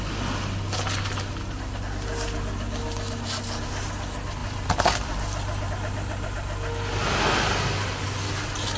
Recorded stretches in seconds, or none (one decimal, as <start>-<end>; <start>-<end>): 0.0-4.4; 5.7-8.8